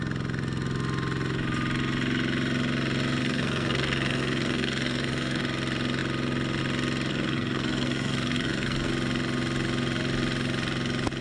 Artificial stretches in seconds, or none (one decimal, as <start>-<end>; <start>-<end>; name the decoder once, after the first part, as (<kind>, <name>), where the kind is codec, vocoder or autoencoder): 3.2-5.4 (codec, SNAC); 7.1-8.9

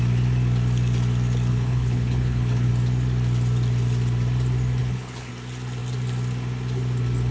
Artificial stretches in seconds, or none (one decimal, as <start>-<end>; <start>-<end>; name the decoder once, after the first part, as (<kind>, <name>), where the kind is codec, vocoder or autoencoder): 1.5-2.7 (codec, HILCodec); 4.8-5.3

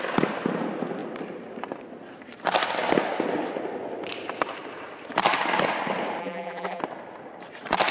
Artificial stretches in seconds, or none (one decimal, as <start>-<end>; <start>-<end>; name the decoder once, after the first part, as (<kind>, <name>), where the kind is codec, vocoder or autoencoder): 6.2-6.8 (vocoder, BigVGAN v2)

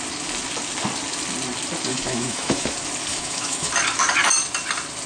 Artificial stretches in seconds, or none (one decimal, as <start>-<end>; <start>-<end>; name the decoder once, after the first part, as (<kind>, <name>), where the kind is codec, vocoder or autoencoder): 1.9-2.7 (autoencoder, DAC-VAE); 3.1-3.7

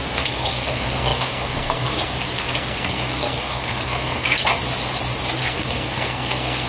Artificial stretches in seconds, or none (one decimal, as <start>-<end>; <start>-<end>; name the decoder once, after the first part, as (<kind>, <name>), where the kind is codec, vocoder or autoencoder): 0.0-4.5 (codec, SNAC); 5.4-6.7